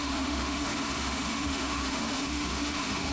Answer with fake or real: fake